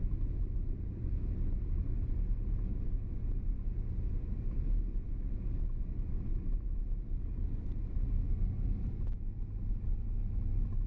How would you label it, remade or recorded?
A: recorded